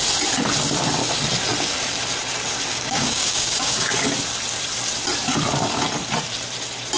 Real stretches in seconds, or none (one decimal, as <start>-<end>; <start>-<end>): 0.0-2.7; 3.9-7.0